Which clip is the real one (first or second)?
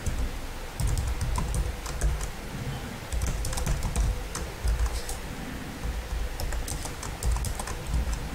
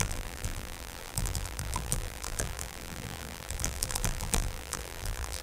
first